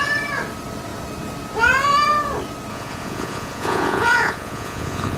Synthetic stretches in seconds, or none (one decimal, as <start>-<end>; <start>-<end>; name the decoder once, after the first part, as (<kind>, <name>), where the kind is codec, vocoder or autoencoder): 2.7-5.2 (vocoder, Vocos)